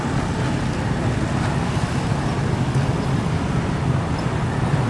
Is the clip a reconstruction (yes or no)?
no